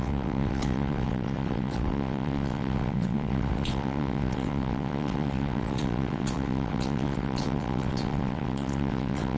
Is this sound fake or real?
fake